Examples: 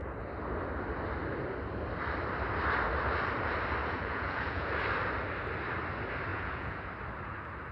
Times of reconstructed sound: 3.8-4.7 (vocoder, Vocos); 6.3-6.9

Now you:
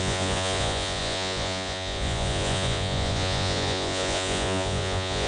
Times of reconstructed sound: 0.0-5.3 (vocoder, Vocos)

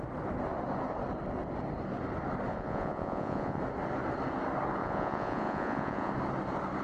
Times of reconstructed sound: 2.5-3.6 (vocoder, Vocos); 4.8-6.1

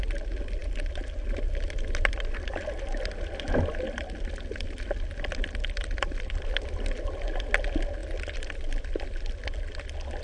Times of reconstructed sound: none

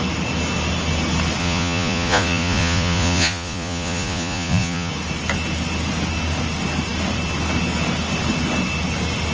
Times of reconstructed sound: 1.4-4.9 (vocoder, Vocos)

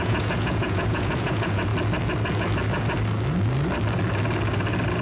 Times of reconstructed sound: 0.0-1.7 (vocoder, Vocos)

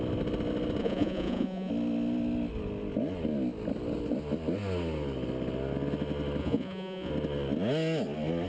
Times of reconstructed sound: 0.8-1.7 (vocoder, Vocos); 6.4-7.1